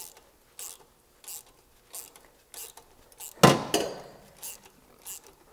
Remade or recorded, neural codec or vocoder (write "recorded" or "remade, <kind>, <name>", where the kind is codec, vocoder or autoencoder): recorded